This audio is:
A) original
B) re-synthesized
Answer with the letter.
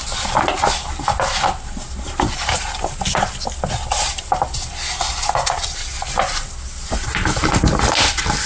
A